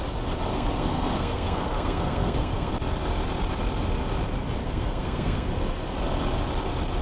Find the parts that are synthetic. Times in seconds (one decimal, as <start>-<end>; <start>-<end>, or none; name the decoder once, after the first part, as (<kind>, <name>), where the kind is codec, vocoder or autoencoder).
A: 0.5-2.7 (codec, SNAC); 4.6-5.5